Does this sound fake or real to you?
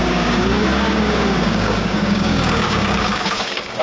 fake